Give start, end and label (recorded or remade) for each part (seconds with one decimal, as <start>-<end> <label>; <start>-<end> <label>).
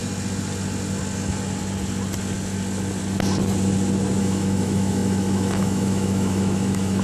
0.0-4.2 recorded; 4.2-7.0 remade